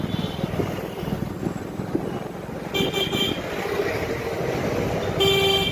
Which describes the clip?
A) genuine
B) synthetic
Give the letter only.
A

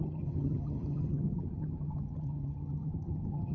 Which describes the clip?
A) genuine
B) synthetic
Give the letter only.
B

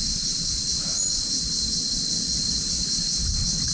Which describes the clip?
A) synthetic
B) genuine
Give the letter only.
A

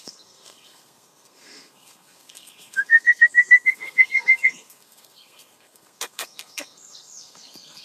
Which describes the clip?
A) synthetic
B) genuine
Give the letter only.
A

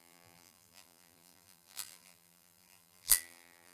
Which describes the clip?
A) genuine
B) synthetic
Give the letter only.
B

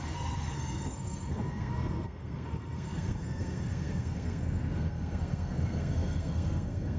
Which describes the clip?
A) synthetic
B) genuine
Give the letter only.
A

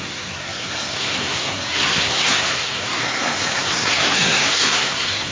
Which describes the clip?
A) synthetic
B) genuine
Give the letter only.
A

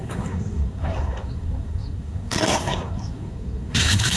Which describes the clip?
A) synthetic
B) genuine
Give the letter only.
A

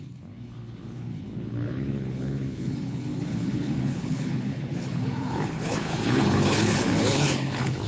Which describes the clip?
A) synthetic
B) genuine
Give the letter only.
A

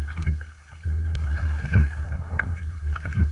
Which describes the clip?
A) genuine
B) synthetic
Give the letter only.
B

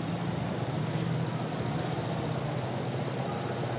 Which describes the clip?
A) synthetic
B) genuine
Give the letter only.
B